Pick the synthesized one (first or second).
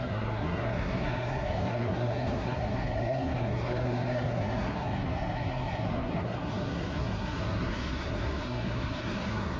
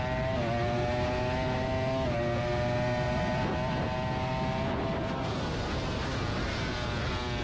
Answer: first